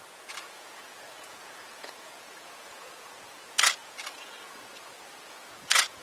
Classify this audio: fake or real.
fake